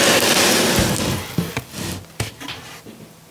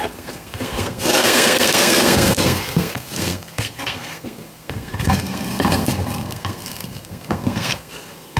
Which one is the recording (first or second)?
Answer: first